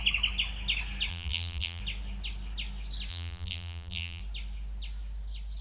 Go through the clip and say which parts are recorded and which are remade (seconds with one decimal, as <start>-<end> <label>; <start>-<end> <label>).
0.0-1.1 recorded; 1.1-1.8 remade; 1.8-3.1 recorded; 3.1-4.2 remade; 4.2-5.6 recorded